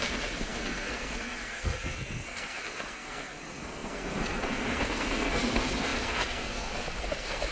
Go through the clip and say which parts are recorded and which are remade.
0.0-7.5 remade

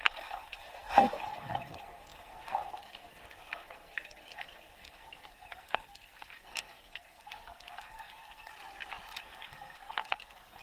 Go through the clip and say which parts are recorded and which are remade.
0.0-8.5 remade; 8.5-9.2 recorded; 9.2-10.6 remade

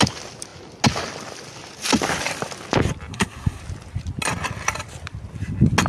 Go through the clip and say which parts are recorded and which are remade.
0.0-3.1 recorded; 3.1-3.6 remade; 3.6-5.9 recorded

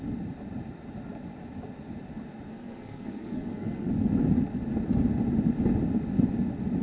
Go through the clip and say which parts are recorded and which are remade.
0.0-2.5 recorded; 2.5-3.9 remade; 3.9-6.8 recorded

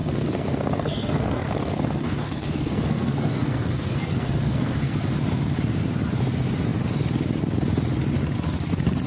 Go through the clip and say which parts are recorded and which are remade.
0.0-5.0 remade; 5.0-9.1 recorded